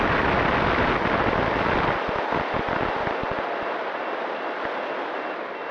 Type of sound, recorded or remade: recorded